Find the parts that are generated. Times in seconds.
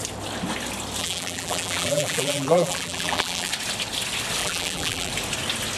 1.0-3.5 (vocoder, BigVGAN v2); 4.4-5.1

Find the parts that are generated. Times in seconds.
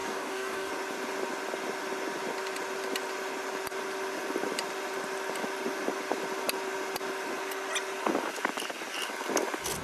0.0-0.7 (codec, DAC)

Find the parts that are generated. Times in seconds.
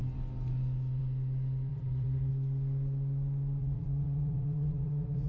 1.7-2.3 (vocoder, Vocos); 3.6-5.3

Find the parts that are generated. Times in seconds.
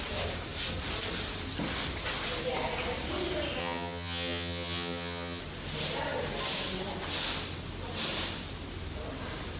3.6-5.4 (vocoder, HiFi-GAN)